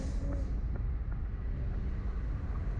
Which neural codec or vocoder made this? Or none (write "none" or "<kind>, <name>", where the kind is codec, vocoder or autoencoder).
none